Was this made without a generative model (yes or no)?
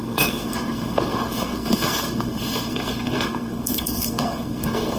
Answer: no